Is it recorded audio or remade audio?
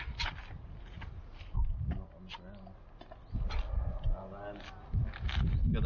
recorded